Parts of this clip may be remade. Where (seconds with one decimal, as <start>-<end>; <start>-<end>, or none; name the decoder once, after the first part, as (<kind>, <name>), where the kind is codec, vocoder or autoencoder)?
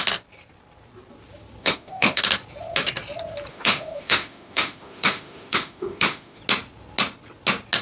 1.6-2.2 (autoencoder, DAC-VAE); 3.5-6.4